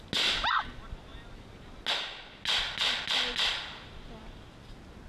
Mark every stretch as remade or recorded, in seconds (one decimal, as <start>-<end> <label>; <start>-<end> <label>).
0.0-5.1 recorded